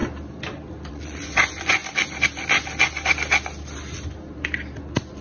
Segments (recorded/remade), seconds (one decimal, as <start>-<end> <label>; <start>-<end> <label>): 0.0-0.9 recorded; 0.9-1.8 remade; 1.8-5.2 recorded